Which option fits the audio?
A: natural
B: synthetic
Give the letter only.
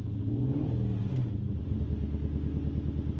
A